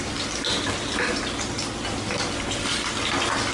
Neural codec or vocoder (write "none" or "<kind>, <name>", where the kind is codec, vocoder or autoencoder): none